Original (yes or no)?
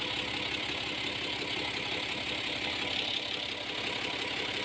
yes